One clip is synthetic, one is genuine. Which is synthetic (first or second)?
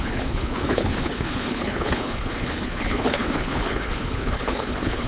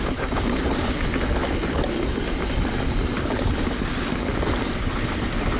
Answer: first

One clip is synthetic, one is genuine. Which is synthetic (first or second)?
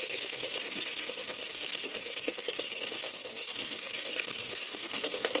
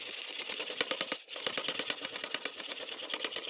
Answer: first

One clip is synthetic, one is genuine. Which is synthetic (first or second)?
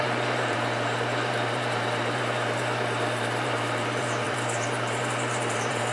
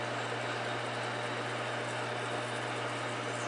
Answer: first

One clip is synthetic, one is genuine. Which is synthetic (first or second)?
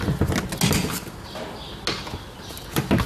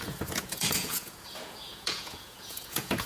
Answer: second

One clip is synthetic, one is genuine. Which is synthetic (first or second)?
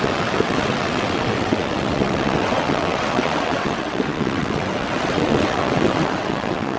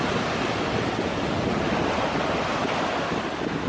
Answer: first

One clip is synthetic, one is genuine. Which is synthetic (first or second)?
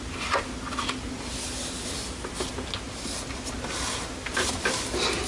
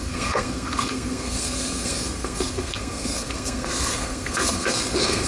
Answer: second